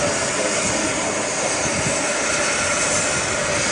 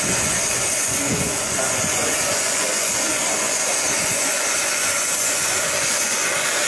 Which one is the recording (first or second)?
first